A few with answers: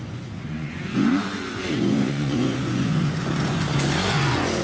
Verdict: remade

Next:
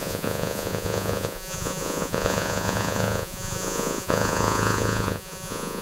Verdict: remade